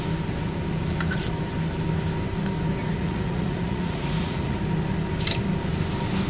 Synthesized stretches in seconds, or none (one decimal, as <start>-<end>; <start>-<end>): 2.8-4.6